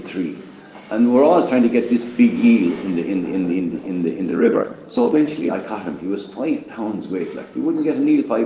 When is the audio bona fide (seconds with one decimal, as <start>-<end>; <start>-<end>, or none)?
0.0-4.3; 5.5-8.5